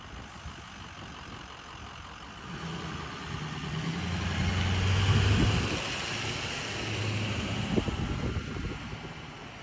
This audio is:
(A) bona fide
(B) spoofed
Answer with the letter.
A